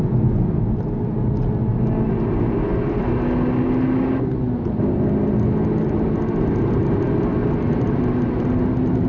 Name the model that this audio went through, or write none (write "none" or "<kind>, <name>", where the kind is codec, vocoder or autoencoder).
none